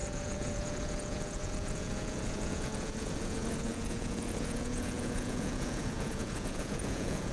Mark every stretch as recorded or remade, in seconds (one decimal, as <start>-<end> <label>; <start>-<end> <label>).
0.0-7.3 remade